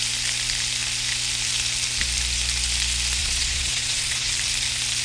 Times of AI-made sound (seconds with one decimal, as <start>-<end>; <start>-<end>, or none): 3.2-4.3